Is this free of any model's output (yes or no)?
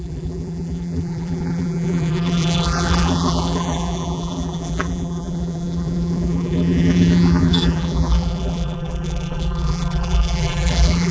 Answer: no